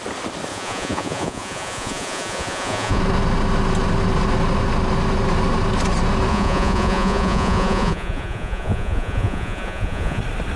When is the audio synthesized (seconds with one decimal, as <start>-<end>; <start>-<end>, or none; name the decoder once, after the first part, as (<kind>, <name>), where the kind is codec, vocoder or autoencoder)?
0.5-3.0 (vocoder, Vocos); 6.3-10.2